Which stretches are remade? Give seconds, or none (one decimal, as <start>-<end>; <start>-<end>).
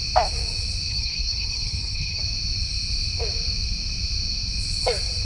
0.9-2.2